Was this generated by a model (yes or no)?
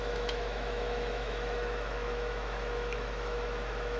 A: yes